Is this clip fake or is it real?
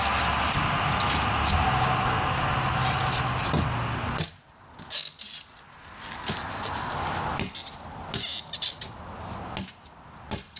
real